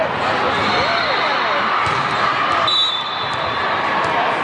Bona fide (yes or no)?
no